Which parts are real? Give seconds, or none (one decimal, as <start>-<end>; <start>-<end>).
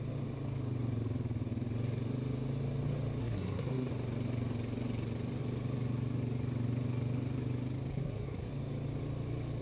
0.0-3.2; 3.9-7.9; 8.5-9.6